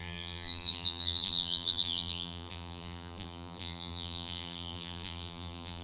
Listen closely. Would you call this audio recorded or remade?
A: remade